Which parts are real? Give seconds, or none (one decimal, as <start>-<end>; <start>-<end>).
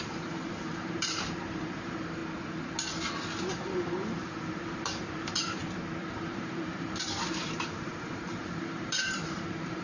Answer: 2.2-3.5; 5.6-6.1